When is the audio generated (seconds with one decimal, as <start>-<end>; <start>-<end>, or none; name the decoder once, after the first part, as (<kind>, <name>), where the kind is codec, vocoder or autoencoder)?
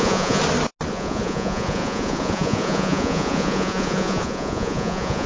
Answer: 0.0-0.4 (vocoder, Vocos); 0.9-5.3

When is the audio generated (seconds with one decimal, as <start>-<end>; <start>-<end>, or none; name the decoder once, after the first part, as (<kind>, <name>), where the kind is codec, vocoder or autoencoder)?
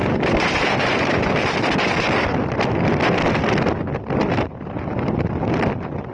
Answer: 0.0-1.3 (vocoder, BigVGAN v2)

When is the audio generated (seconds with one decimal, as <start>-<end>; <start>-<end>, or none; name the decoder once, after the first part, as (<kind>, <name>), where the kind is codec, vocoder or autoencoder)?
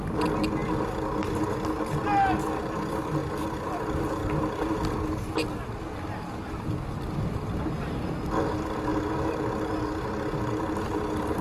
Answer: none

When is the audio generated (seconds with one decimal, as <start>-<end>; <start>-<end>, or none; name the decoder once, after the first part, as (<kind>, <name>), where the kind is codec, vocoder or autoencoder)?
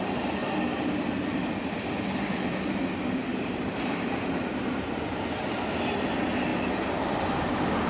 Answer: 3.3-4.8 (vocoder, BigVGAN v2)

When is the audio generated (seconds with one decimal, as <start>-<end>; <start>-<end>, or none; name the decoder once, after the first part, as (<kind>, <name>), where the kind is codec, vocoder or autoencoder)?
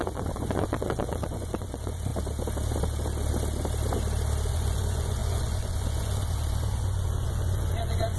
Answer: 0.0-2.1 (vocoder, Vocos); 4.5-8.2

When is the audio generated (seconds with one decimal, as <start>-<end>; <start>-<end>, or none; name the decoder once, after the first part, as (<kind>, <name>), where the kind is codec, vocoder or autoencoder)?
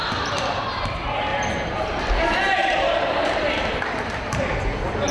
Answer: 0.0-0.6 (vocoder, BigVGAN v2); 1.3-4.4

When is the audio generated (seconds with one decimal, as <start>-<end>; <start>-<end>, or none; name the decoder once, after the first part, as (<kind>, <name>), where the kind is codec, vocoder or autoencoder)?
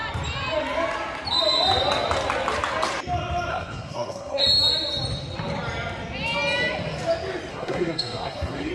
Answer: 3.5-4.4 (codec, SNAC); 7.5-8.7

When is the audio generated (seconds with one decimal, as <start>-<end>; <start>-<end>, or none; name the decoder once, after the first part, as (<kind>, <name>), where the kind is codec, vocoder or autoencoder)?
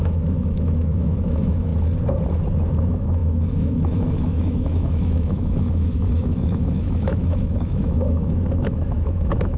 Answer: 0.0-1.7 (autoencoder, DAC-VAE); 2.8-9.6